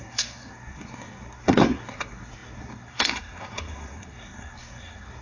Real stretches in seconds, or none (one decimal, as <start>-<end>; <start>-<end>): none